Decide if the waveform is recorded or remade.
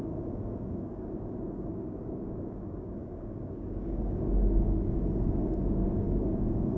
remade